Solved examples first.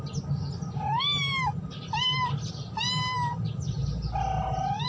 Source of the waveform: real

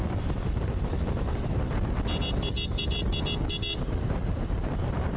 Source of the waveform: real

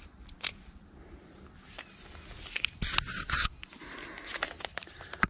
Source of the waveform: real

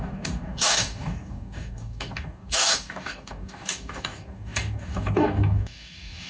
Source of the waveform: fake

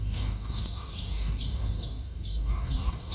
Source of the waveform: fake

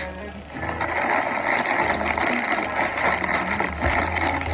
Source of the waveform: real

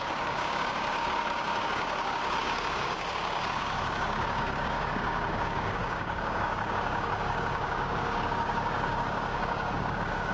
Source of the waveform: fake